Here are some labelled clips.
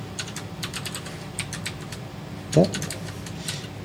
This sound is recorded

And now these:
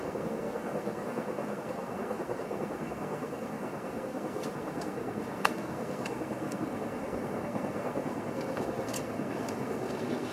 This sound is remade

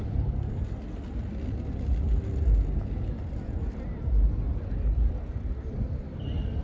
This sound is recorded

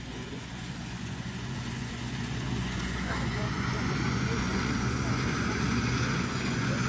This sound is remade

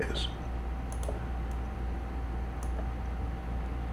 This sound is recorded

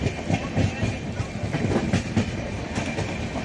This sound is recorded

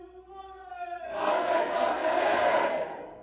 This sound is remade